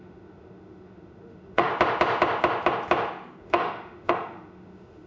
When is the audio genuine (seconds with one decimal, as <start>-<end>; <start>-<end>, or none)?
1.7-3.4